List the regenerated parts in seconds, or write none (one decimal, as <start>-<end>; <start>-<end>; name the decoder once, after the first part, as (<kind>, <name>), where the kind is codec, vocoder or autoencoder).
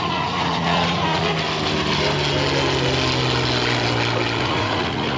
0.0-1.3 (vocoder, Vocos); 4.4-5.2